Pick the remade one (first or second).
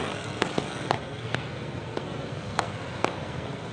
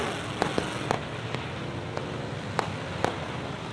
first